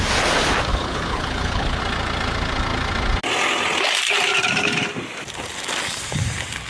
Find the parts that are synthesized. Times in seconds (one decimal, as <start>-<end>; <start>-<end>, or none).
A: 0.7-1.8